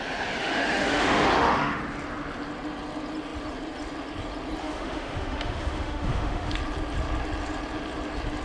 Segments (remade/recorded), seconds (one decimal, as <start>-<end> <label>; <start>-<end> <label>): 0.0-0.4 recorded; 0.4-1.8 remade; 1.8-4.6 recorded; 4.6-6.5 remade; 6.5-8.4 recorded